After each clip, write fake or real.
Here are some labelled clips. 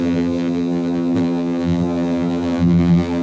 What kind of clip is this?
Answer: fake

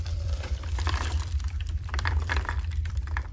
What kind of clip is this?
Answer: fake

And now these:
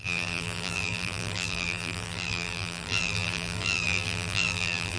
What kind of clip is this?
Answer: fake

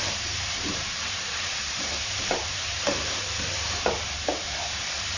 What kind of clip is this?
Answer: fake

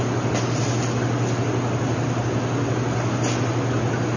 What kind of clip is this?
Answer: real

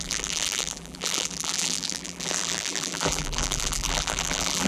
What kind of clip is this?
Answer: fake